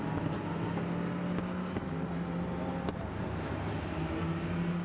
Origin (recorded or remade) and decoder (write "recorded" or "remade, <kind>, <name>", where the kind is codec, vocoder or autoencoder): recorded